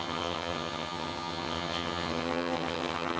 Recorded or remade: remade